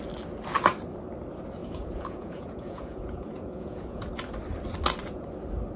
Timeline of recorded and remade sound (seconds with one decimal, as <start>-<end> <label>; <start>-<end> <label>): 0.0-1.6 recorded; 1.6-4.1 remade; 4.1-5.8 recorded